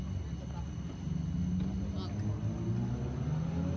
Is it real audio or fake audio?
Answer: real